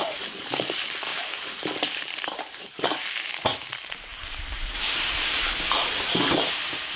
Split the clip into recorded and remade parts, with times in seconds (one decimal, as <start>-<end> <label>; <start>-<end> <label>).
0.0-1.1 recorded; 1.1-2.8 remade; 2.8-4.1 recorded; 4.1-5.4 remade; 5.4-7.0 recorded